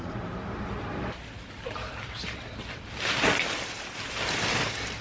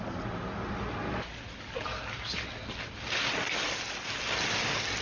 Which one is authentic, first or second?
second